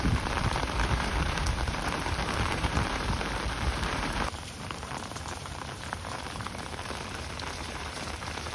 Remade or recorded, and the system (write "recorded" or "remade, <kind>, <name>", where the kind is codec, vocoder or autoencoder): remade, vocoder, BigVGAN v2